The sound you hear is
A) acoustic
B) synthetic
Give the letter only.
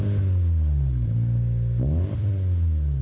A